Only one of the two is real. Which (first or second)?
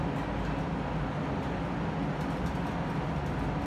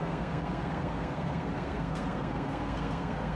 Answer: first